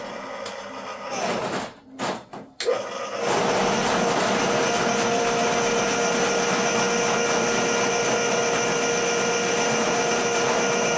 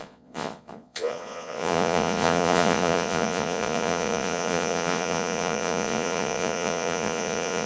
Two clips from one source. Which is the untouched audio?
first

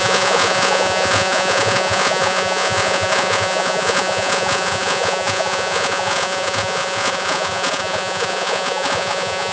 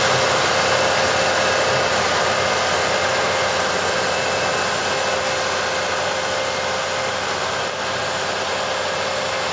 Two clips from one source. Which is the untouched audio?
second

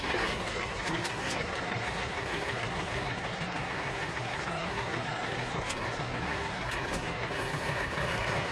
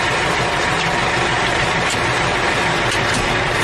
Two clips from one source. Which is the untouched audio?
second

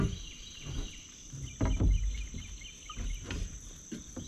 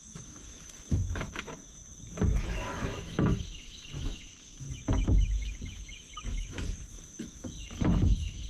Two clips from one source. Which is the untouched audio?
first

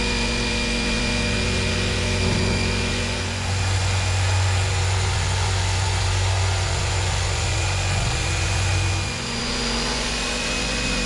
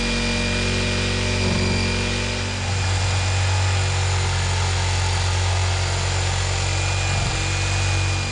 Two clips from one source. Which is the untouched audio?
second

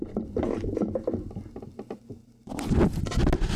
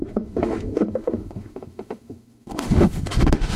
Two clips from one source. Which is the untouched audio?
first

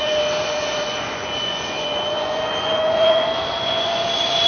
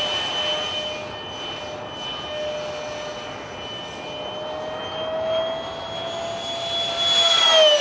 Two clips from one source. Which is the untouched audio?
second